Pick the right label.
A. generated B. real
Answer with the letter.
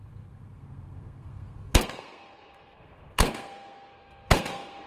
A